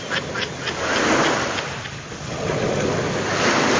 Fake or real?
real